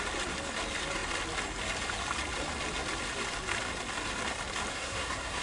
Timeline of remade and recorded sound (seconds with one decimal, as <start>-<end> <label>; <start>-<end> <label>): 0.0-4.7 recorded; 4.7-5.4 remade

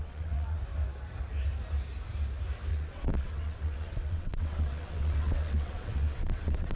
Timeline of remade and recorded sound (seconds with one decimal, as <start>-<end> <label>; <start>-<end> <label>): 0.0-0.6 remade; 0.6-2.7 recorded; 2.7-6.8 remade